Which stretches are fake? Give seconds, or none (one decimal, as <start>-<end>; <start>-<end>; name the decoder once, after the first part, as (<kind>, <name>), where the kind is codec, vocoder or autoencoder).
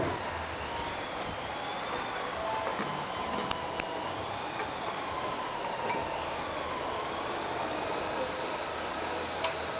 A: 8.7-9.4 (codec, DAC)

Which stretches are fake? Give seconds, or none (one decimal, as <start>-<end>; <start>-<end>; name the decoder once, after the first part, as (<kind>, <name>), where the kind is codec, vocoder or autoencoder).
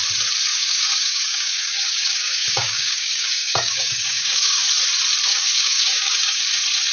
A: 0.5-4.6 (codec, DAC); 5.3-6.4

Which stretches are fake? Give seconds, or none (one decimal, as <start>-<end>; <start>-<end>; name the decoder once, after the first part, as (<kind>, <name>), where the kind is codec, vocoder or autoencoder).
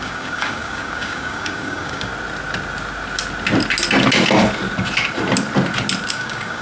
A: 0.0-2.1 (codec, DAC); 6.1-6.6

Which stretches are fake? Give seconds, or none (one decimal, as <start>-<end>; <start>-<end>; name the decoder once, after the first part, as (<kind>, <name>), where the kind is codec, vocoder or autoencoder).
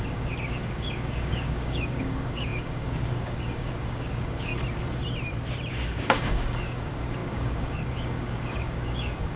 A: 0.0-4.5 (codec, DAC); 5.7-9.4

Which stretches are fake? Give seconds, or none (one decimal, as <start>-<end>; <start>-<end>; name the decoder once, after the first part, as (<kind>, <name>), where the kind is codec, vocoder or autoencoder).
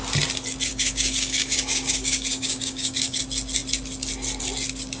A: 0.7-3.2 (codec, DAC)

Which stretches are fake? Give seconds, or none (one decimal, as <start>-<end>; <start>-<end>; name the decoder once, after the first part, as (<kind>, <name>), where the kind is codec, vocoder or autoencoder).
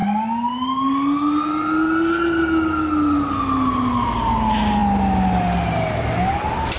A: none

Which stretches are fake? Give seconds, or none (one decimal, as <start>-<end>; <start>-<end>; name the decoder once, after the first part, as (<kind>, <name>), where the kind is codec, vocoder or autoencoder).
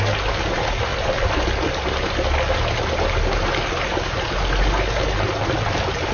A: none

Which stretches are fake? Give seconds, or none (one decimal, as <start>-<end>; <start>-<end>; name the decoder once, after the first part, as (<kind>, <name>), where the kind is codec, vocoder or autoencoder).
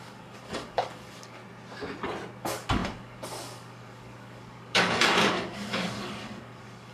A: 0.0-1.4 (codec, DAC); 2.4-6.9